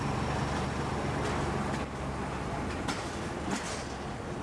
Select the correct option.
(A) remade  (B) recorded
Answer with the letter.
B